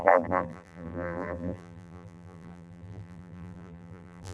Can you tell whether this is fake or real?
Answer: fake